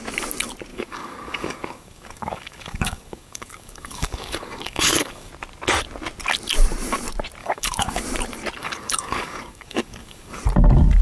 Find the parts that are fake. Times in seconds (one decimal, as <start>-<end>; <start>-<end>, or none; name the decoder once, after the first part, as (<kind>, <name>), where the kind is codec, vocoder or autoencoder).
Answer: 0.7-5.3 (codec, DAC); 7.4-8.0; 8.6-10.4